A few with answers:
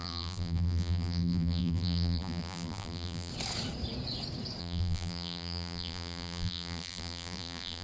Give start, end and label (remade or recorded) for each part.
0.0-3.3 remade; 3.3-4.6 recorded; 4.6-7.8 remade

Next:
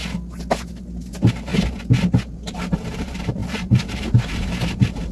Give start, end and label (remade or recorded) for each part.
0.0-0.8 recorded; 0.8-1.5 remade; 1.5-2.3 recorded; 2.3-5.1 remade

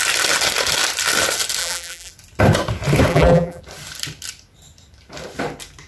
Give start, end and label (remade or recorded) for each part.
0.0-1.6 recorded; 1.6-2.1 remade; 2.1-3.1 recorded; 3.1-3.6 remade; 3.6-5.9 recorded

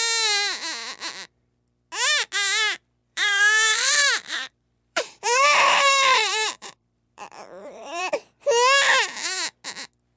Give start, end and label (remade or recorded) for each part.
0.0-3.0 recorded; 3.0-8.0 remade; 8.0-10.2 recorded

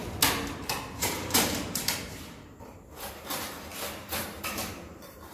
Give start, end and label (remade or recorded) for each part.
0.0-1.0 recorded; 1.0-5.3 remade